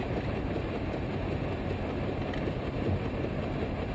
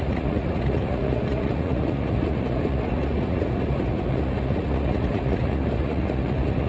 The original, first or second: first